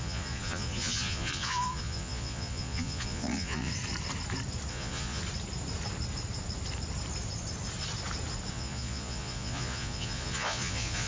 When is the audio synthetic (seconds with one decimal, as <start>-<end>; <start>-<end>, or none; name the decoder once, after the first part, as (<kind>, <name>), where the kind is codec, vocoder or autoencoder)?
0.0-3.7 (vocoder, Vocos); 4.7-5.2; 8.5-11.1